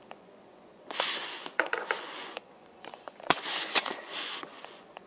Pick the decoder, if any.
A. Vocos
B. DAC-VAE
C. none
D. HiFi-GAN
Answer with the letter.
A